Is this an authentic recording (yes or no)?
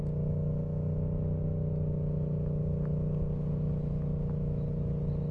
yes